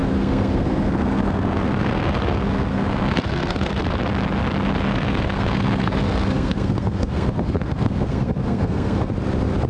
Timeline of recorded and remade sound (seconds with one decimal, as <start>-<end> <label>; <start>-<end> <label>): 0.0-3.8 remade; 3.8-4.9 recorded; 4.9-9.1 remade; 9.1-9.7 recorded